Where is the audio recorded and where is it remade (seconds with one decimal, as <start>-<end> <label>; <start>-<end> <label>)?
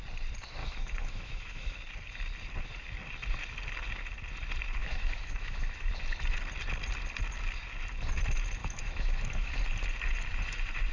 0.0-0.6 recorded; 0.6-1.8 remade; 1.8-4.8 recorded; 4.8-5.9 remade; 5.9-8.6 recorded; 8.6-9.5 remade; 9.5-10.9 recorded